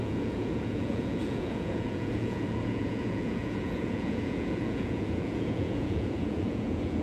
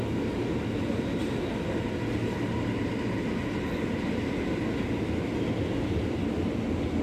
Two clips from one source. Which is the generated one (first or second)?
first